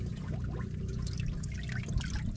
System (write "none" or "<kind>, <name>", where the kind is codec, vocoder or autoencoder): none